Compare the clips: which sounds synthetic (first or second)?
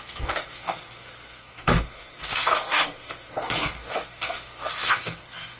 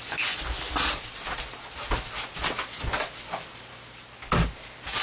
first